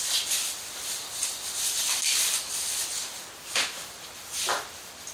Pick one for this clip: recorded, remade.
remade